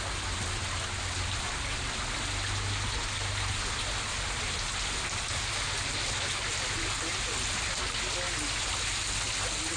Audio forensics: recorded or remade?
recorded